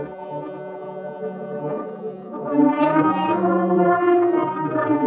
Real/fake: fake